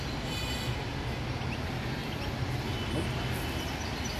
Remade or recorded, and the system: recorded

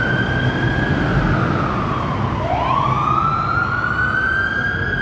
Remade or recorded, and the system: recorded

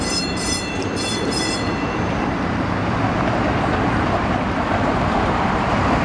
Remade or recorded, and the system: remade, vocoder, BigVGAN v2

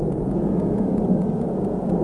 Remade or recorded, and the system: remade, vocoder, Vocos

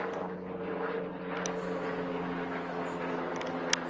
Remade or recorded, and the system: recorded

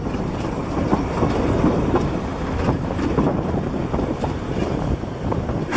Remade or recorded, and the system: remade, vocoder, BigVGAN v2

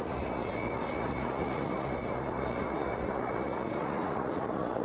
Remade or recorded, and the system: remade, vocoder, Vocos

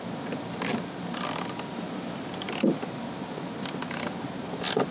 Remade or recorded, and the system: recorded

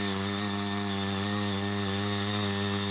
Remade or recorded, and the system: recorded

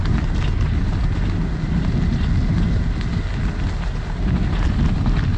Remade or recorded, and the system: recorded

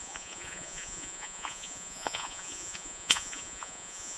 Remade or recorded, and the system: remade, vocoder, Vocos